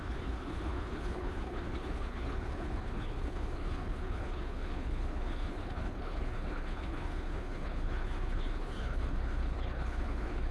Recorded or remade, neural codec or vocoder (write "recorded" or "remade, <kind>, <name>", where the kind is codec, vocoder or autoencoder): remade, codec, HILCodec